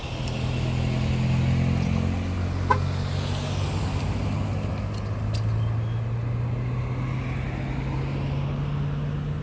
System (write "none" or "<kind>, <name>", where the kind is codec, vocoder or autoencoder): none